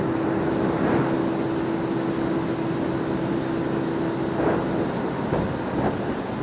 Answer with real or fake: real